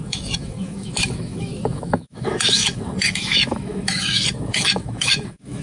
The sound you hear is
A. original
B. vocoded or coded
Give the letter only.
B